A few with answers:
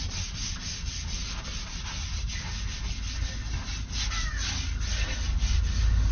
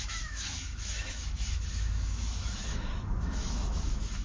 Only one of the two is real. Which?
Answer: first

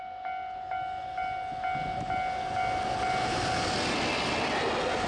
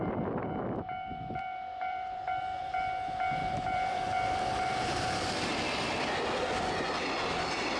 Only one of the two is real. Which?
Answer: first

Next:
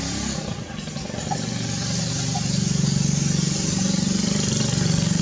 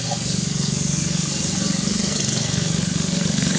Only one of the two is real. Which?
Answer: first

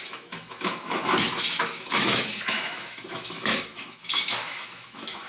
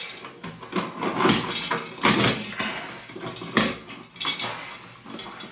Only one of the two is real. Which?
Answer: second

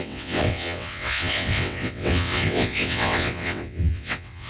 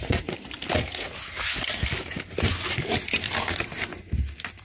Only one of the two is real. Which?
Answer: second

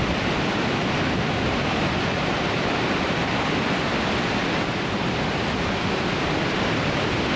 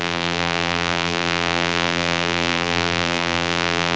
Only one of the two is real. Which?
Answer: first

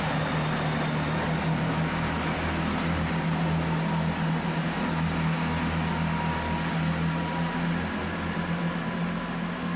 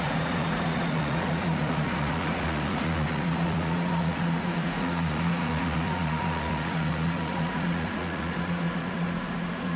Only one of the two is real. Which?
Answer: first